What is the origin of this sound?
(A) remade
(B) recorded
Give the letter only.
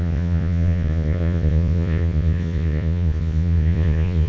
A